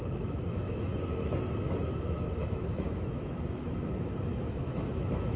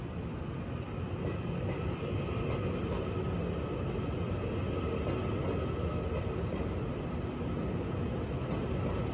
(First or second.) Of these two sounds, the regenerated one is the first